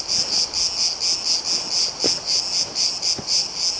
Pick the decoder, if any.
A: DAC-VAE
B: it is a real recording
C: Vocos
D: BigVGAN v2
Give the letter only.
B